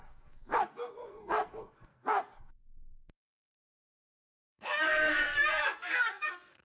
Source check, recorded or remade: remade